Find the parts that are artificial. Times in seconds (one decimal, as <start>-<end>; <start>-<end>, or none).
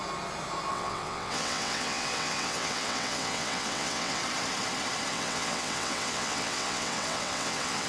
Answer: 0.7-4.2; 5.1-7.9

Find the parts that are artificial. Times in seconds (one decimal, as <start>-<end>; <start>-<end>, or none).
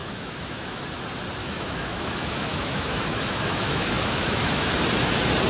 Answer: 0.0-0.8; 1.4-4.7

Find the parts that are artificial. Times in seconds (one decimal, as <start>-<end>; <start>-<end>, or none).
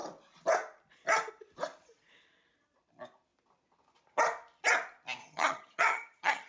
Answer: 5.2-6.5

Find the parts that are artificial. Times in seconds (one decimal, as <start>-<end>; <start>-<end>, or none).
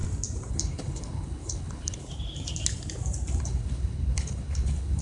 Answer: 0.5-2.0; 3.4-5.0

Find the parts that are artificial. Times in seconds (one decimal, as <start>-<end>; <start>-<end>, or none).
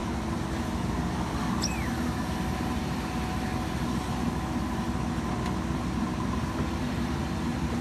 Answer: none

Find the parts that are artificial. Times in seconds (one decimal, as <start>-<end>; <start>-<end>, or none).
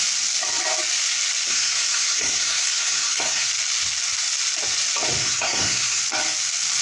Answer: 1.5-3.5; 5.2-6.0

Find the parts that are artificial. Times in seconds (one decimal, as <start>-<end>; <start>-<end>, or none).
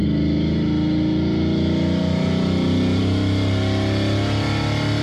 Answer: none